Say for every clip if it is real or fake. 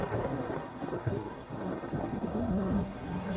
fake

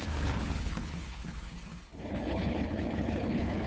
fake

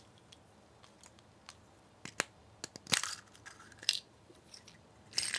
real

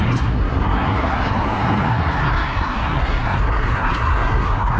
fake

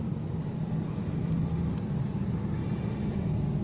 real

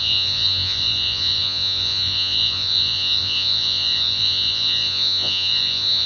fake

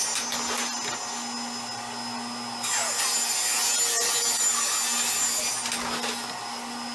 real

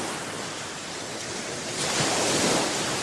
real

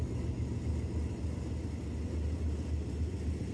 real